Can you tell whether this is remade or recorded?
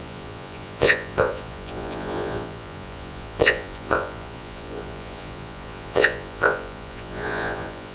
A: remade